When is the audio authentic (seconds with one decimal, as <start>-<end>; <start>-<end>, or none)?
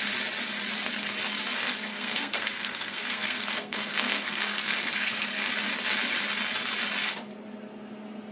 0.0-1.9; 5.5-8.3